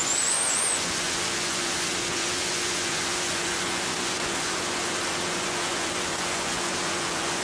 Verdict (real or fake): fake